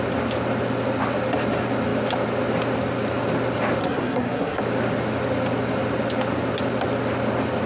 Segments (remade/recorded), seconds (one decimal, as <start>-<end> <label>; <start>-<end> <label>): 0.0-3.8 recorded; 3.8-4.6 remade; 4.6-7.7 recorded